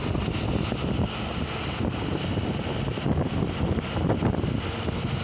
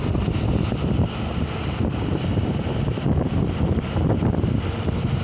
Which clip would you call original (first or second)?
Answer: first